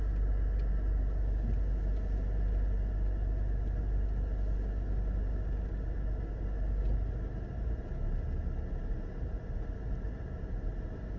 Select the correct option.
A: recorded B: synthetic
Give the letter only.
A